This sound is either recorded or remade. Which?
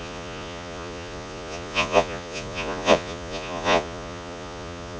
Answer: remade